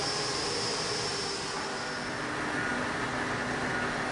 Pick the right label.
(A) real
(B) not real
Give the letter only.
A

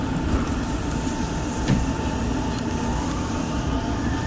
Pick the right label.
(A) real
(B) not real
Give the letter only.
A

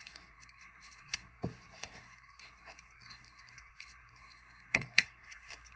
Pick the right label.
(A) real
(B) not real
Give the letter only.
B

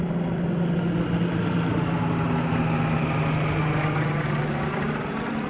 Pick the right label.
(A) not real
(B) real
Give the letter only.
B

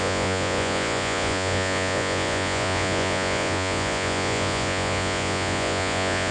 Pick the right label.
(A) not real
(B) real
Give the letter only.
A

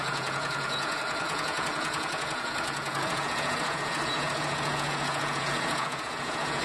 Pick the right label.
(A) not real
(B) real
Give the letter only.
A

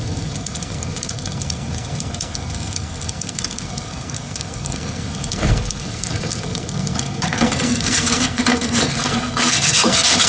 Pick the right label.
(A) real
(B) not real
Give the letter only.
B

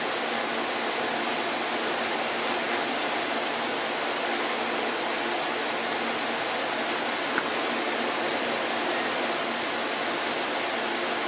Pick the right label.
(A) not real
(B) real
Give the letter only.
B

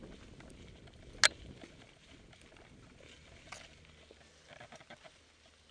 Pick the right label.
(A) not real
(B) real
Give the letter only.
B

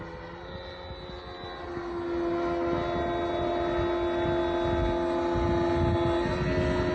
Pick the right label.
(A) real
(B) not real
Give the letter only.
A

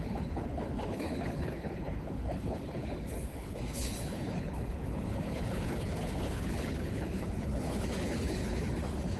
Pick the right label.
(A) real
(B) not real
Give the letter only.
B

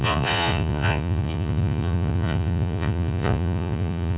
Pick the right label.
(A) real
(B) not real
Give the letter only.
B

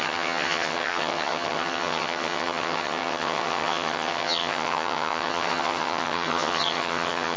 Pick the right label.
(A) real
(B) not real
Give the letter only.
B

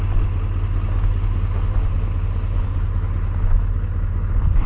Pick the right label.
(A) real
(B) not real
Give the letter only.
A